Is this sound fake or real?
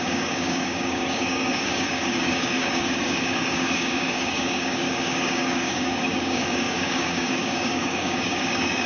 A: fake